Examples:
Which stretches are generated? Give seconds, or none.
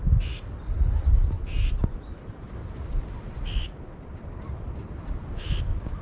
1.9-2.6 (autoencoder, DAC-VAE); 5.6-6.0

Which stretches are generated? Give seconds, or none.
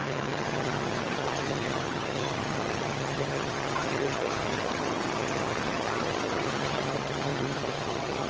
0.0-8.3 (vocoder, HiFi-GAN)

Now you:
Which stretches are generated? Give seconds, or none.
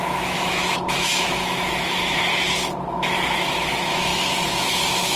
0.0-2.3 (autoencoder, DAC-VAE); 2.9-5.2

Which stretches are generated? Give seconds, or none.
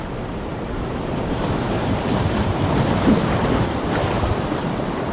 0.5-3.5 (vocoder, BigVGAN v2)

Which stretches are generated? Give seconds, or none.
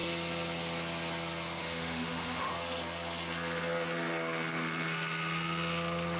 1.6-2.5 (autoencoder, DAC-VAE)